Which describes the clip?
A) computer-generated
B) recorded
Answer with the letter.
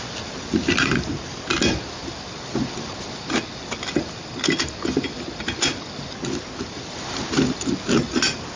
B